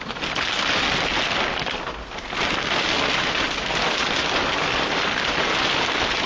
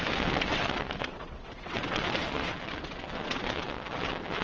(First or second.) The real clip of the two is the first